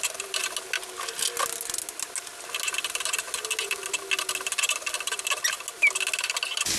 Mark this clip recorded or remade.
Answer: recorded